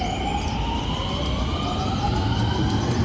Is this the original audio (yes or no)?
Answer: yes